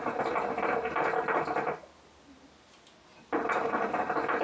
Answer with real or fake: real